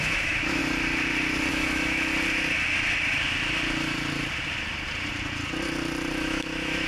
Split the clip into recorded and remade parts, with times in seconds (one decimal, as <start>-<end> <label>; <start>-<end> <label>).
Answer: 0.0-0.6 remade; 0.6-1.5 recorded; 1.5-2.1 remade; 2.1-6.2 recorded; 6.2-6.9 remade